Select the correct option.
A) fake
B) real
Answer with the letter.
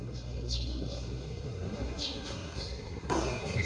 A